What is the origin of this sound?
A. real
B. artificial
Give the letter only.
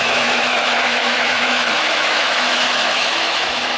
B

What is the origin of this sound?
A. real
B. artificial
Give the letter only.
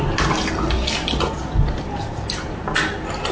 A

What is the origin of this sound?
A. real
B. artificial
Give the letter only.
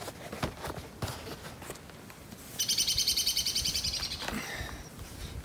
A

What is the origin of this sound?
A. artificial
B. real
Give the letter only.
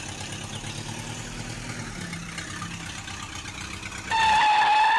B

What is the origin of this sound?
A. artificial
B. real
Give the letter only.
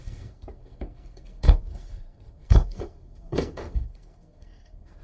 A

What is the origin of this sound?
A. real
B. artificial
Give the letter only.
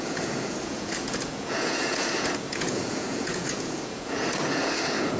B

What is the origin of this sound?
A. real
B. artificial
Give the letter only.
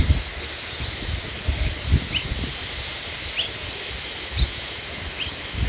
A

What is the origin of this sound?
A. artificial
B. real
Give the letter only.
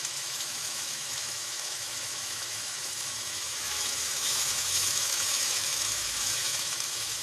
A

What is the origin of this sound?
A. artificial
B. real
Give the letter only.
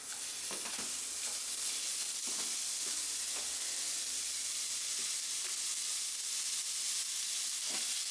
B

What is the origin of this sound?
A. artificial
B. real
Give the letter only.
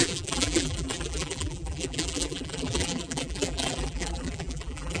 A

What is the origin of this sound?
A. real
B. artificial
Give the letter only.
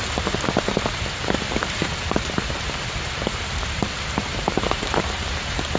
B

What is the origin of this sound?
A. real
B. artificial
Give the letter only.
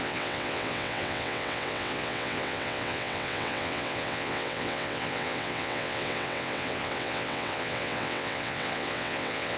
B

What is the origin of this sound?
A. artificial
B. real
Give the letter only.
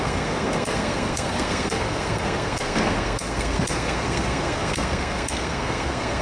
A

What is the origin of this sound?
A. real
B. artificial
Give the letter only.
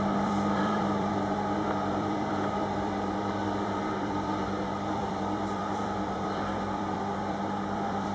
B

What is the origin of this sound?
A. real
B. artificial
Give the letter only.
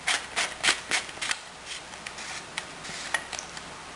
A